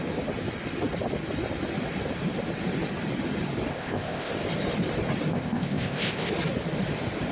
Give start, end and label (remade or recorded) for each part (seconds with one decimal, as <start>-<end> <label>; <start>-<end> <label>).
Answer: 0.0-3.7 recorded; 3.7-4.3 remade; 4.3-5.3 recorded; 5.3-6.3 remade; 6.3-7.3 recorded